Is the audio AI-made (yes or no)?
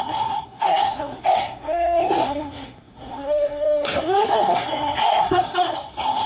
yes